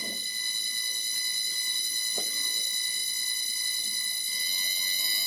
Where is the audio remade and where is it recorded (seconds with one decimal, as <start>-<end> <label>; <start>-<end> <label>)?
0.0-5.3 recorded